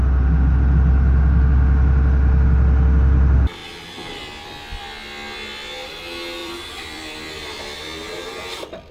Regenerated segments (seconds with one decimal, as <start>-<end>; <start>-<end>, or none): 6.4-7.6